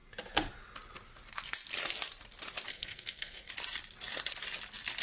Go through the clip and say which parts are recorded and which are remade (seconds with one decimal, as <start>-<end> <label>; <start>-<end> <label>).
0.0-2.7 recorded; 2.7-3.5 remade; 3.5-5.0 recorded